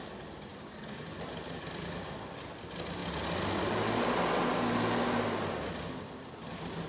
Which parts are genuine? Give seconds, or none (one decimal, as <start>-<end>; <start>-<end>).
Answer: 0.0-0.5; 1.0-6.9